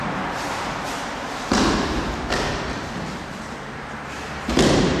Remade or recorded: remade